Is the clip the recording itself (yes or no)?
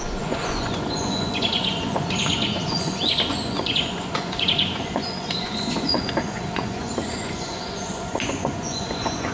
no